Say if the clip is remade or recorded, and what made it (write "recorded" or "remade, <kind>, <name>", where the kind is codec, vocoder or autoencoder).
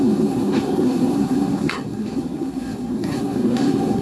remade, codec, SNAC